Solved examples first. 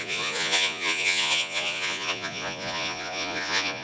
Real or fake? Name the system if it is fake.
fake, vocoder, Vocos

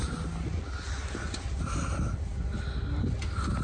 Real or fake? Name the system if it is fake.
real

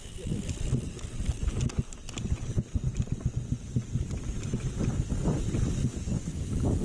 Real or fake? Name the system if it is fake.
real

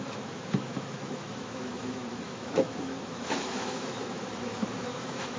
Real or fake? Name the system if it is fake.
fake, autoencoder, DAC-VAE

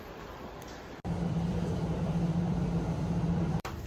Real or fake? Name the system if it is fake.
fake, vocoder, BigVGAN v2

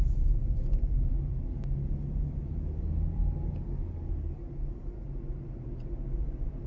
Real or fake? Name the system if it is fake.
real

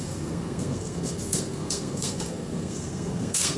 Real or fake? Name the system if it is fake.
fake, codec, SNAC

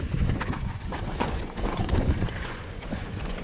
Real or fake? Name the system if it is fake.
fake, vocoder, Vocos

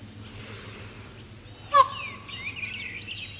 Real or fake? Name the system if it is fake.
real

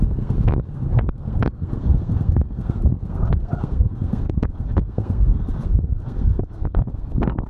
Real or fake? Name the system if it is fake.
fake, codec, SNAC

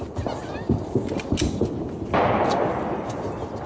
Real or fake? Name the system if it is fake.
real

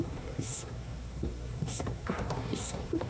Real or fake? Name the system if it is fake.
fake, codec, SNAC